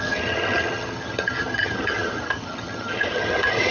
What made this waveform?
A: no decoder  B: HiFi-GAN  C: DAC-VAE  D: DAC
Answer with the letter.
B